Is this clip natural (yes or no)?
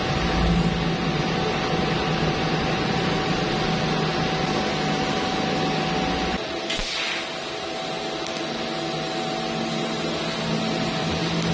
yes